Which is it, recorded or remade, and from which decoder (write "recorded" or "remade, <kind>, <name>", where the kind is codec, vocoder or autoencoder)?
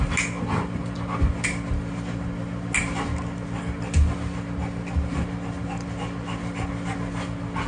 recorded